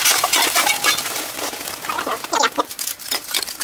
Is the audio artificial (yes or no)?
no